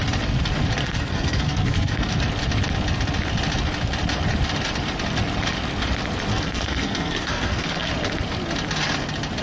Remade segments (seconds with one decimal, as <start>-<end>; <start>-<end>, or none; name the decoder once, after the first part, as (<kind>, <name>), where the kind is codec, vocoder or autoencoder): 0.8-2.2 (codec, SNAC); 6.3-7.9